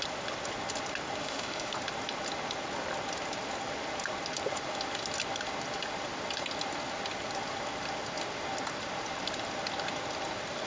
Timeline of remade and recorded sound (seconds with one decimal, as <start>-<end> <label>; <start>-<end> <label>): 0.0-1.2 recorded; 1.2-1.7 remade; 1.7-10.7 recorded